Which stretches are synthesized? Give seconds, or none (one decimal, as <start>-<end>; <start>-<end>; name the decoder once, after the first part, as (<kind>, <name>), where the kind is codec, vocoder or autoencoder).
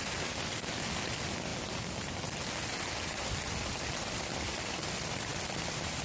none